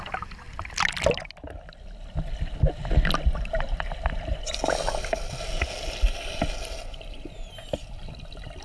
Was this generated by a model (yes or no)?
no